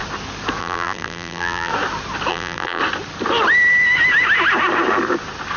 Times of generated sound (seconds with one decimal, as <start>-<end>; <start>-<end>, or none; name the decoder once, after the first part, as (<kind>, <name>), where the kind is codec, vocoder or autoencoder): 0.6-1.7 (vocoder, BigVGAN v2); 2.3-2.8